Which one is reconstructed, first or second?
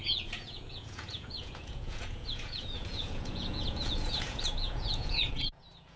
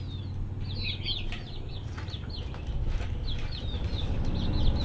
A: first